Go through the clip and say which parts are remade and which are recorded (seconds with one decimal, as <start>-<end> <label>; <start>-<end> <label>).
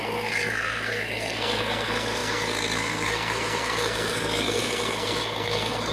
0.0-5.9 remade